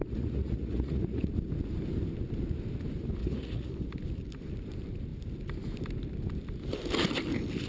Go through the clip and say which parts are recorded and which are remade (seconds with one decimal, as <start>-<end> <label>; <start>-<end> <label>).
0.0-1.3 remade; 1.3-3.2 recorded; 3.2-3.7 remade; 3.7-7.7 recorded